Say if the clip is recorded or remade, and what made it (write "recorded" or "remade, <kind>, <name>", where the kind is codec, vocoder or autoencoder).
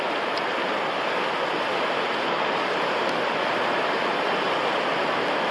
recorded